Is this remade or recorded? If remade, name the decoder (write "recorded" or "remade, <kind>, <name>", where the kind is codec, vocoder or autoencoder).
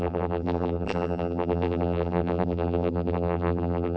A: remade, vocoder, BigVGAN v2